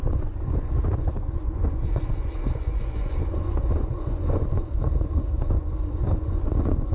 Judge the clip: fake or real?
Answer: fake